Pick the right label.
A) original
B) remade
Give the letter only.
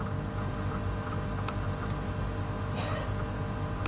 A